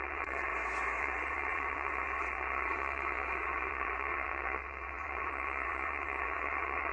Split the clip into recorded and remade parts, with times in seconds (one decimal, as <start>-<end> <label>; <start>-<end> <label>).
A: 0.0-0.5 remade; 0.5-1.0 recorded; 1.0-6.9 remade